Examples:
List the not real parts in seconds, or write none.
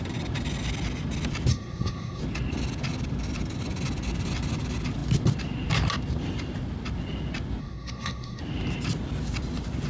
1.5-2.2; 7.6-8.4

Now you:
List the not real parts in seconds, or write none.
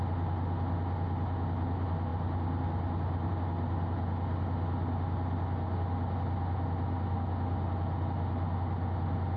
none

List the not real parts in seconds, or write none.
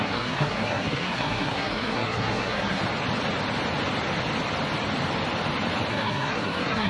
0.0-2.8; 5.9-6.9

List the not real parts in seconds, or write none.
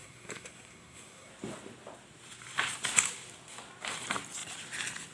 0.0-1.3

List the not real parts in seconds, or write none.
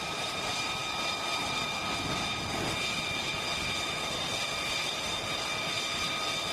none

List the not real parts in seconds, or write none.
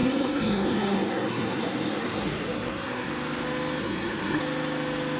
0.0-3.1; 3.8-4.4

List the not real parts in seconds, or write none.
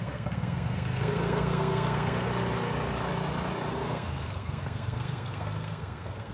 0.0-2.3; 3.7-6.3